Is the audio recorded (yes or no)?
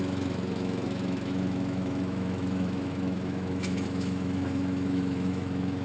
no